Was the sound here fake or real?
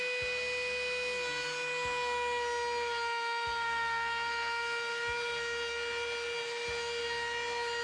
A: real